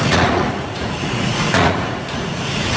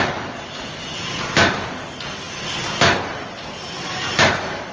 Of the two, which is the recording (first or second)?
second